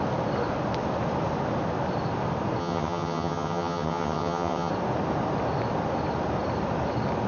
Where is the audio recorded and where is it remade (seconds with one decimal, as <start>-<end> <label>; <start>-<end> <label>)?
0.0-2.6 recorded; 2.6-4.7 remade; 4.7-7.3 recorded